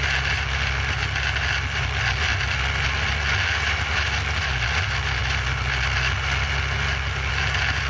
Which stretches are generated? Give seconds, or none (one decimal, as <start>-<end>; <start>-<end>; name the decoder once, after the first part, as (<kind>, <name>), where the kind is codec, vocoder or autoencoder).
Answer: none